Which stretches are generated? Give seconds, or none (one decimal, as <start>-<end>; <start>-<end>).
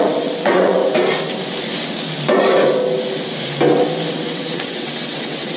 0.0-0.8; 4.1-5.6